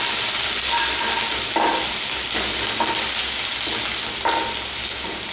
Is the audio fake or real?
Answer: real